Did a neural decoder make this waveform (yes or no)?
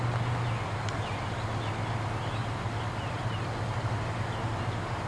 no